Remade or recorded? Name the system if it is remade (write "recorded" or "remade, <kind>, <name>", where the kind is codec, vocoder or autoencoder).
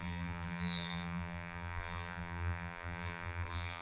remade, vocoder, BigVGAN v2